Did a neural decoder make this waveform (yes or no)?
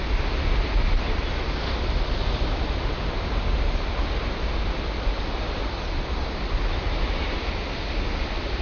no